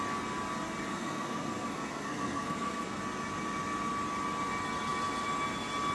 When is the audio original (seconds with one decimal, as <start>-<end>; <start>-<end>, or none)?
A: 0.0-0.9; 3.0-5.9